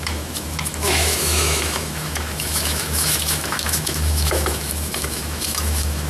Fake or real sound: fake